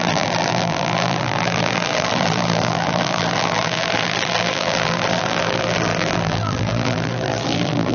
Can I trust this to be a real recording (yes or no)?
no